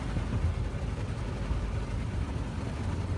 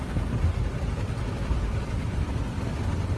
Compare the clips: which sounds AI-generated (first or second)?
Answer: second